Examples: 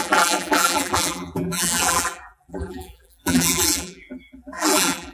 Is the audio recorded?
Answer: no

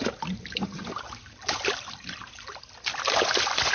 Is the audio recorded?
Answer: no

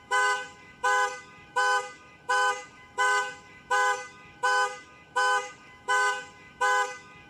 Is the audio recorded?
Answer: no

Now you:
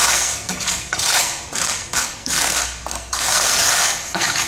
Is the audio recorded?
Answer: no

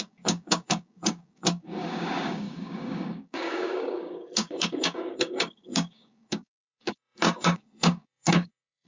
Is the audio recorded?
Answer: no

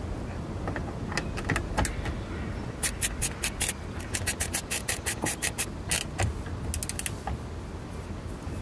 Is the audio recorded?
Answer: yes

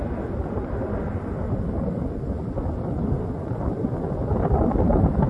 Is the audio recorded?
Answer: yes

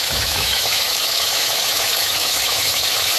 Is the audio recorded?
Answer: no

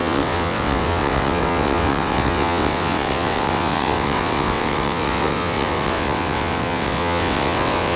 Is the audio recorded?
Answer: no